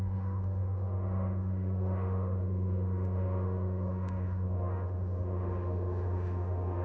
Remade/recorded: remade